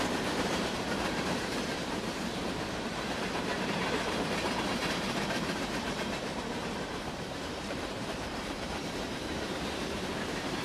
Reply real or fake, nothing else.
fake